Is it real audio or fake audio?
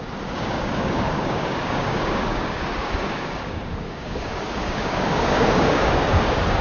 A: fake